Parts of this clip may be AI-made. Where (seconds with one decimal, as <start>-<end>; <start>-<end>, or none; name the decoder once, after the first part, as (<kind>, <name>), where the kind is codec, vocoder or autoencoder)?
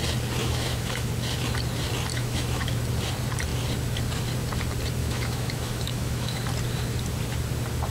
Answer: 0.4-1.1 (autoencoder, DAC-VAE); 2.1-2.8; 5.0-6.4